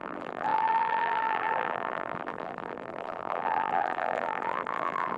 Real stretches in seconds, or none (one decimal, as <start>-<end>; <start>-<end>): none

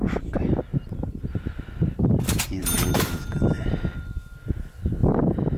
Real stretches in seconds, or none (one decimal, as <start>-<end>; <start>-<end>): 0.0-0.7; 1.6-2.6; 3.2-5.6

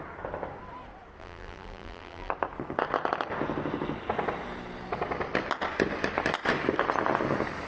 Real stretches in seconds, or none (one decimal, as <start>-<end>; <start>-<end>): 0.0-1.2; 2.3-7.7

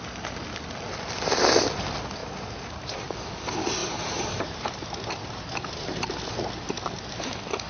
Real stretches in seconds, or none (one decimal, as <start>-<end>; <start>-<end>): 0.0-2.2; 3.1-3.8; 6.3-7.7

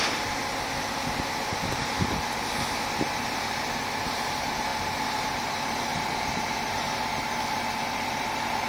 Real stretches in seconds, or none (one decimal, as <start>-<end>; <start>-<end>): 0.4-3.8; 5.9-6.7